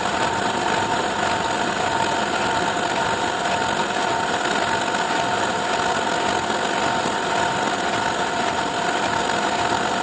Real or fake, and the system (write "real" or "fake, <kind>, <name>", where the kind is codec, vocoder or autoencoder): real